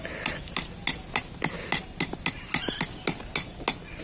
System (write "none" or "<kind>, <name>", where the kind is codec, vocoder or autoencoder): none